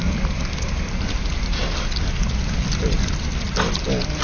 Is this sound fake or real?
real